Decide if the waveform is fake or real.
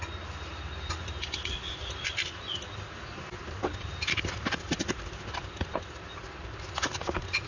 real